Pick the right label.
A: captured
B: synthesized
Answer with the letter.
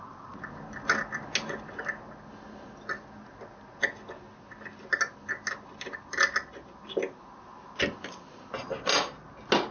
A